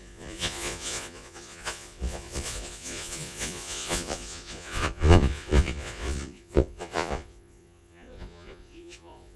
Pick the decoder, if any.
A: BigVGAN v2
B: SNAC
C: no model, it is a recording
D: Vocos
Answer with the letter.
D